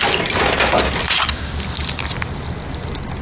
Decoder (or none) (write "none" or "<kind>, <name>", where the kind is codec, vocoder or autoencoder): none